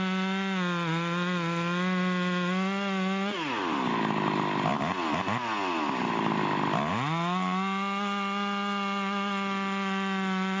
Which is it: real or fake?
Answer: real